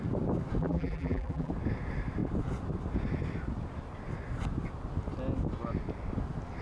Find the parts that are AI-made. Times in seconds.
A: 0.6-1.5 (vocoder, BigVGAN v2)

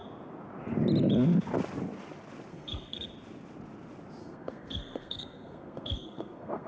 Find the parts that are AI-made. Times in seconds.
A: 2.5-3.1 (codec, SNAC); 4.2-6.7

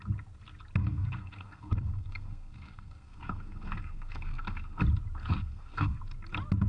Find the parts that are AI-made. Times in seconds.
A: 0.8-4.8 (codec, SNAC); 5.2-6.0

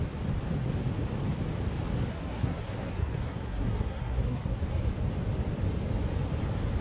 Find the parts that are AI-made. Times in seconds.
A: 2.1-4.6 (codec, SNAC)